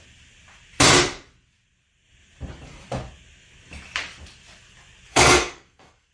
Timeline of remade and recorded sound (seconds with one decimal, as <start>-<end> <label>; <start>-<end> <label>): 0.0-5.1 recorded; 5.1-6.1 remade